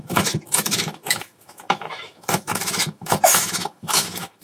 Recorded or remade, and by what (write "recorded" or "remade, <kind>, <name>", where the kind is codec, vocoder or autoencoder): remade, autoencoder, DAC-VAE